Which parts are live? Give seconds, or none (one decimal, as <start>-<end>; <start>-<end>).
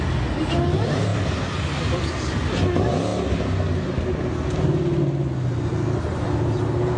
0.0-7.0